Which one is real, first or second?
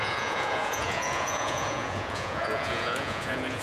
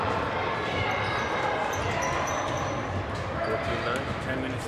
second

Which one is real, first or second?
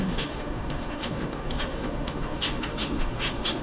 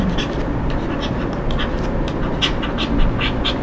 second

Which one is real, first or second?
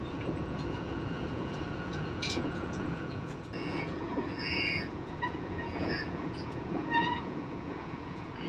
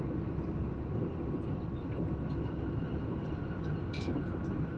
second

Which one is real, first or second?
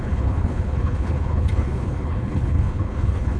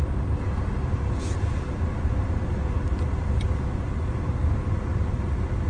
second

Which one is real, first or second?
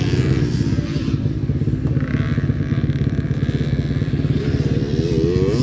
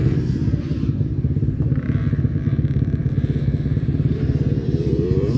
first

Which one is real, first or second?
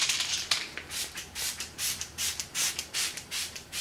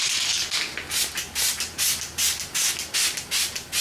second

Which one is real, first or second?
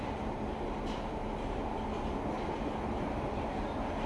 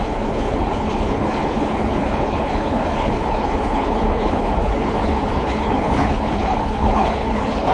first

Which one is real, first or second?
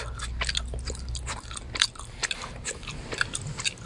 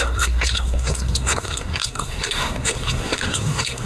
first